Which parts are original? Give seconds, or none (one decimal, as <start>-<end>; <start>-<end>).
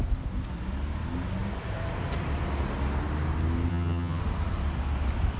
0.0-3.7; 4.2-5.4